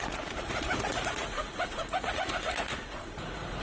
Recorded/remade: remade